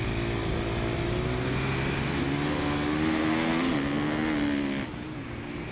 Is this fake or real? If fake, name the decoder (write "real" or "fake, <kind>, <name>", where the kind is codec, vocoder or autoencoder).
real